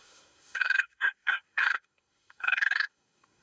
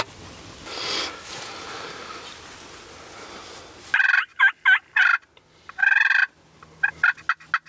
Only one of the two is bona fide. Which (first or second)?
second